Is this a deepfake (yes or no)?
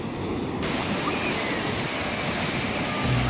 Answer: no